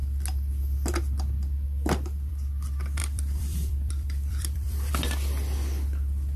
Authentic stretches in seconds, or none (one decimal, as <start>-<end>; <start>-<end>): 0.0-3.0; 4.9-6.4